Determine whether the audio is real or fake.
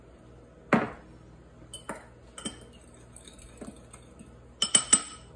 real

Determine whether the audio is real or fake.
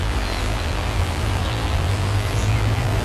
fake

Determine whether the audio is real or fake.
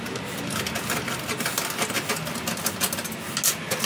real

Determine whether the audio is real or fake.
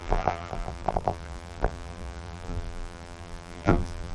fake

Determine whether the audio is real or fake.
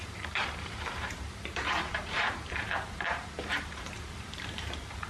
fake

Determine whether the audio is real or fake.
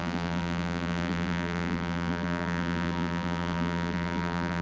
fake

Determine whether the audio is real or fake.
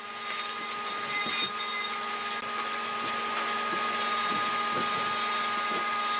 real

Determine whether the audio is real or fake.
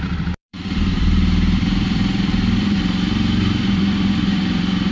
fake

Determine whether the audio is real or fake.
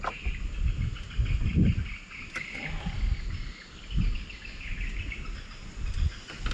real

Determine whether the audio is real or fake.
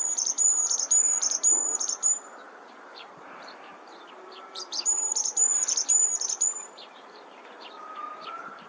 fake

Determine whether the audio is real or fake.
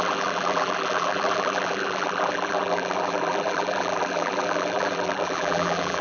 fake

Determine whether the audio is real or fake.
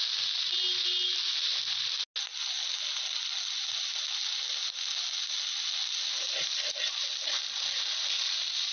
real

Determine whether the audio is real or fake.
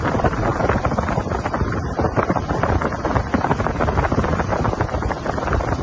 fake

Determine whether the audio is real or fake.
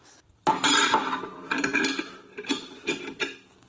fake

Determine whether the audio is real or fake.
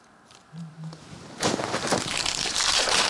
fake